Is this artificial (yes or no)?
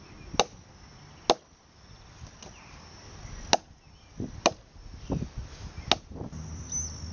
no